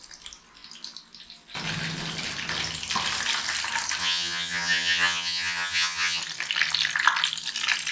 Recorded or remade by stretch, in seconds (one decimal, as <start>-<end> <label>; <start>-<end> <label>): 0.0-4.0 recorded; 4.0-6.2 remade; 6.2-7.9 recorded